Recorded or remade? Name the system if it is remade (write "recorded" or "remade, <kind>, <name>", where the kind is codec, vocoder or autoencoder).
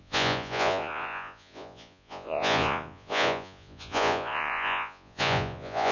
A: remade, vocoder, Vocos